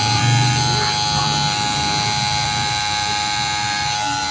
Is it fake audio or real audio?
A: fake